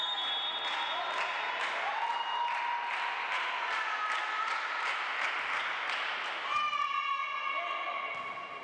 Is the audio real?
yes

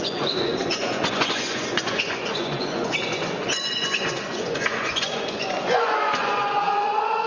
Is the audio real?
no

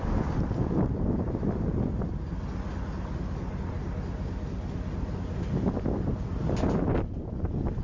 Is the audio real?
yes